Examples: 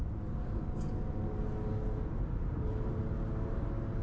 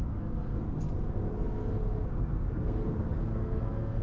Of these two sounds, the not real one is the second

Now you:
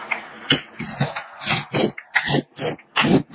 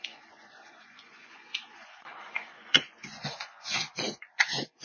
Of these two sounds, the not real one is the second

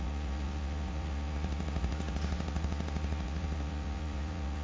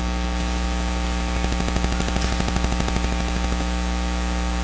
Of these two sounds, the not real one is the first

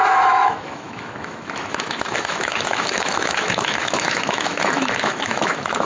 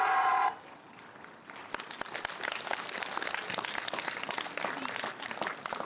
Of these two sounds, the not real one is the first